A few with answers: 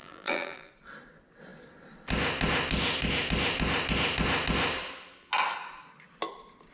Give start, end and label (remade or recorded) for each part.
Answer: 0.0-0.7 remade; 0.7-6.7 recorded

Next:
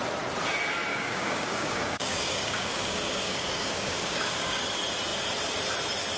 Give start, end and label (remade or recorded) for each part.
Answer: 0.0-0.9 recorded; 0.9-4.6 remade; 4.6-6.2 recorded